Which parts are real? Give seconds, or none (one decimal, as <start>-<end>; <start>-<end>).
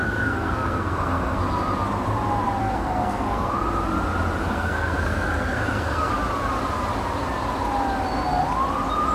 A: 1.4-2.6; 3.5-4.4; 6.1-9.1